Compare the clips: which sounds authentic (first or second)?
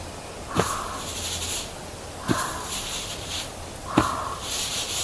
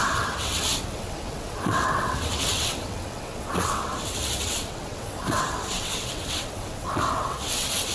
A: first